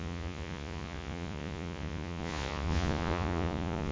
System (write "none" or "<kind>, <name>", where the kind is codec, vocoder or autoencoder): vocoder, Vocos